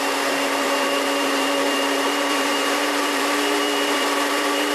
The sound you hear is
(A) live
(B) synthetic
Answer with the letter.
B